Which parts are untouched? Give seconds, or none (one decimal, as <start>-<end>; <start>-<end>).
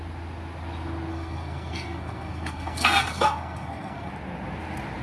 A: 0.0-1.1; 4.1-5.0